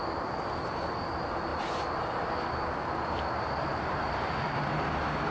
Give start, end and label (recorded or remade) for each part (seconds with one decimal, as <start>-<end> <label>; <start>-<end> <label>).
0.0-1.5 recorded; 1.5-4.7 remade; 4.7-5.3 recorded